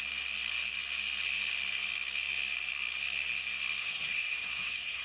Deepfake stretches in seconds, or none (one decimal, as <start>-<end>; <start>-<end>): 3.8-5.0